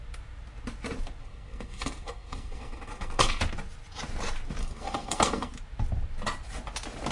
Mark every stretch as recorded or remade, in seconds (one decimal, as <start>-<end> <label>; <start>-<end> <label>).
0.0-1.2 recorded; 1.2-3.4 remade; 3.4-4.6 recorded; 4.6-5.5 remade; 5.5-7.1 recorded